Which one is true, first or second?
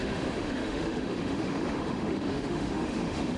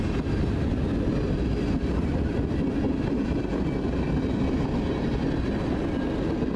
second